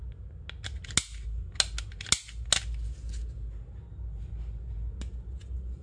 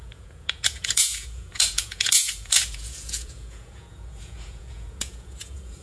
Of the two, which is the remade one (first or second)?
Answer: second